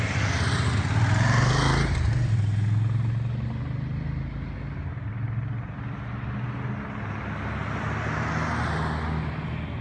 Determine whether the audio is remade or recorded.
recorded